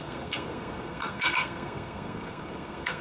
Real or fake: fake